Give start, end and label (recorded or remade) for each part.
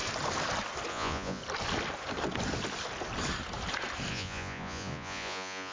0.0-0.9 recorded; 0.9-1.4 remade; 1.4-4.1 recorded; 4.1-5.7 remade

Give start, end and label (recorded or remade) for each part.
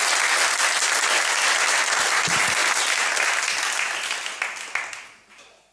0.0-5.7 recorded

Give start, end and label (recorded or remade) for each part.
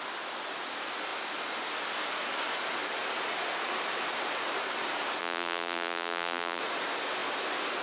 0.0-5.2 recorded; 5.2-6.6 remade; 6.6-7.8 recorded